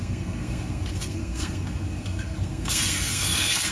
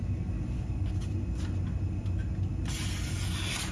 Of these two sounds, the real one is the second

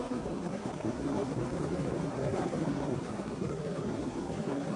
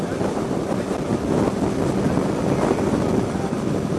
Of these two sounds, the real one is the second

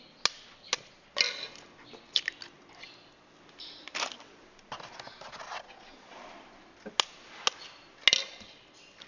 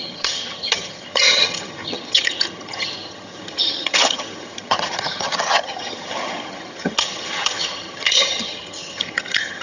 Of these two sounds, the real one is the first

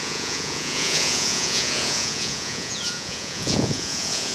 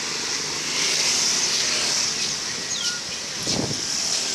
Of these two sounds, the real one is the second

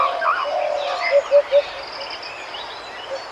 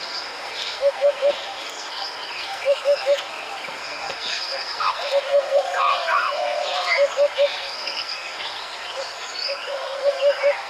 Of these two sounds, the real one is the first